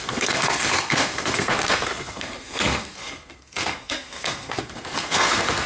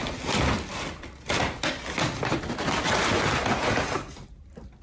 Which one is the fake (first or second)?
first